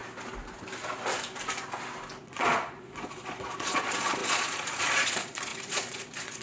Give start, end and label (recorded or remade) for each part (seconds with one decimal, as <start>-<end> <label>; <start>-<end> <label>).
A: 0.0-2.2 recorded; 2.2-6.4 remade